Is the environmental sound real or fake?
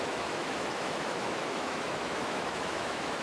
fake